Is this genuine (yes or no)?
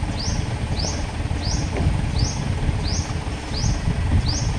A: yes